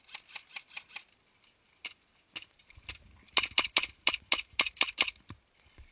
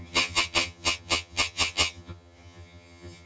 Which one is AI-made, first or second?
second